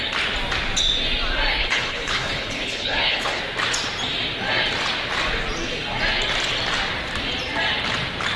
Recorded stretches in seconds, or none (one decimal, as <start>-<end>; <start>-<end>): 0.0-1.6; 3.4-8.4